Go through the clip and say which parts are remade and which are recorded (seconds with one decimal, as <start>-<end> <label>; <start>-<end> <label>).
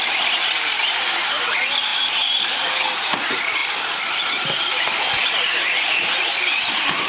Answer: 0.0-1.9 recorded; 1.9-2.5 remade; 2.5-7.1 recorded